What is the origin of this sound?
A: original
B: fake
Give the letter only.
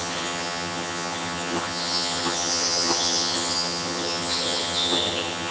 B